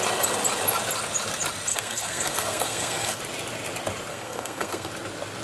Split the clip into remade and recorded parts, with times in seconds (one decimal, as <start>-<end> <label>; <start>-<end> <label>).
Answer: 0.0-1.7 recorded; 1.7-3.2 remade; 3.2-4.1 recorded; 4.1-4.9 remade; 4.9-5.4 recorded